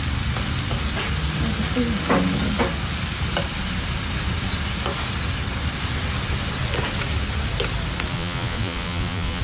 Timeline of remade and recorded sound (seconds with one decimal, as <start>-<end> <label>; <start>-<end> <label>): 0.0-8.1 recorded; 8.1-9.4 remade